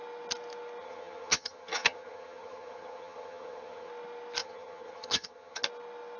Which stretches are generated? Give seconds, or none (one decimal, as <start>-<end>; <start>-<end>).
0.8-3.9; 4.4-5.6